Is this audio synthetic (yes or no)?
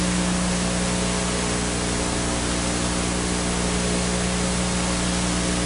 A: no